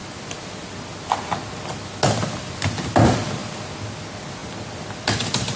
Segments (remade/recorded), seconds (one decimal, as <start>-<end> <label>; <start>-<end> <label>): 0.0-5.6 recorded